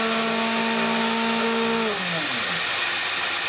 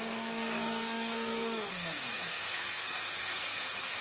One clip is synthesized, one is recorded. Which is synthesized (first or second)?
second